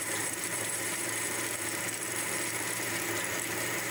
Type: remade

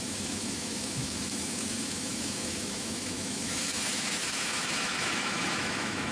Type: remade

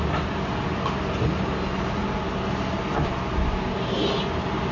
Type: recorded